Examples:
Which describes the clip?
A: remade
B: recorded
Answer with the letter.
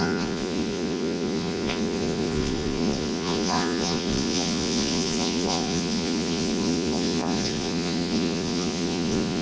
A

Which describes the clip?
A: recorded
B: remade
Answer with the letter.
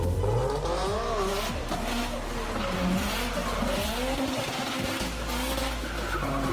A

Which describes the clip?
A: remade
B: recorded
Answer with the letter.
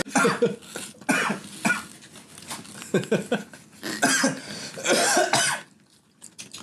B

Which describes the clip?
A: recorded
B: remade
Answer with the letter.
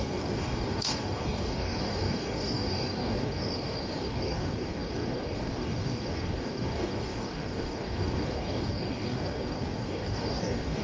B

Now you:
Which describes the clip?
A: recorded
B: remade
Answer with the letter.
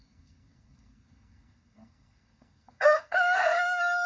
B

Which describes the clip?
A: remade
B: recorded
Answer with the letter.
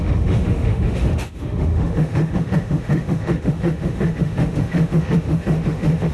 A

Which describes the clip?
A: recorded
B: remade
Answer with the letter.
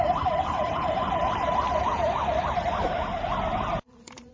B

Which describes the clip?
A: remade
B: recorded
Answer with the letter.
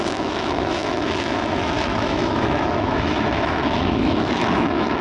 A